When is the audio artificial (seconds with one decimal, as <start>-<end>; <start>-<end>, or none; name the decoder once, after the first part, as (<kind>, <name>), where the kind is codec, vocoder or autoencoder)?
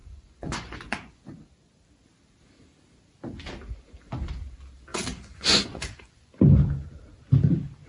0.0-1.2 (vocoder, Vocos); 4.9-6.3